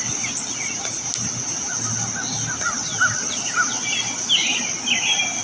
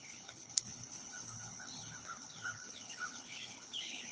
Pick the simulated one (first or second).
second